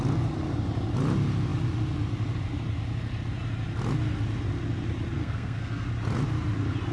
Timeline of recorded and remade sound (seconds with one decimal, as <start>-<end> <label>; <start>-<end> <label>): 0.0-5.2 recorded; 5.2-5.9 remade; 5.9-6.9 recorded